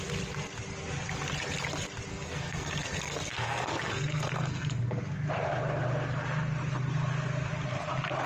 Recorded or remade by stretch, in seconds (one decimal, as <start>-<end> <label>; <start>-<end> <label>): 0.0-2.1 recorded; 2.1-5.0 remade; 5.0-8.3 recorded